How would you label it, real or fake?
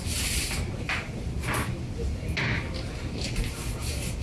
real